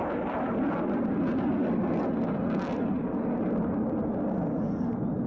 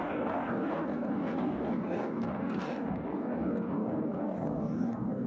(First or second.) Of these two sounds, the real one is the first